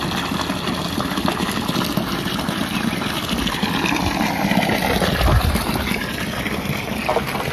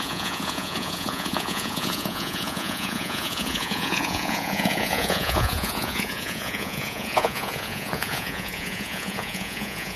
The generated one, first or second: second